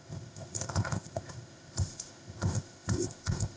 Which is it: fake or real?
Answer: fake